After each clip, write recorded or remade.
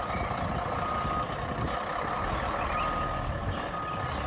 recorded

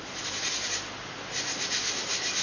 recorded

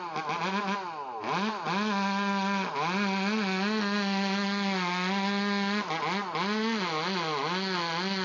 recorded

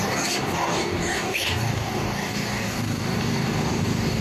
remade